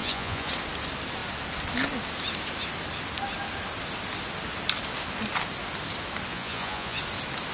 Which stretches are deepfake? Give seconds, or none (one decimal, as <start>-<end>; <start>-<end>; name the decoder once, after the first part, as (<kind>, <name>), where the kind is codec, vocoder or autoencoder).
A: 0.0-0.5 (vocoder, Vocos); 6.3-7.0